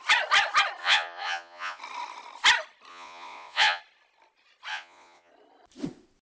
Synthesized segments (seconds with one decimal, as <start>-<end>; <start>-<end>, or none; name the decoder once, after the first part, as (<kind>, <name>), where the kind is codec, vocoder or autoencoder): 0.8-1.8 (vocoder, Vocos); 2.9-3.8; 4.7-5.3